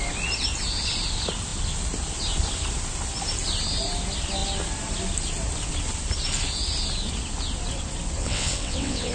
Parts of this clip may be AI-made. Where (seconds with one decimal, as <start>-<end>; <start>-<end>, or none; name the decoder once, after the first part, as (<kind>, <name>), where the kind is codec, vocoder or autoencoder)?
8.2-9.1 (vocoder, WaveNeXt)